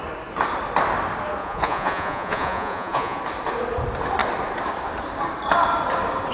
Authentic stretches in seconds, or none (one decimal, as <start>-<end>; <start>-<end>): 0.0-1.4; 3.2-6.3

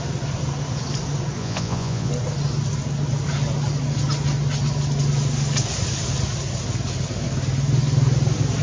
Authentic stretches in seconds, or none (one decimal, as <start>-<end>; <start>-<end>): 0.0-1.4; 2.1-8.6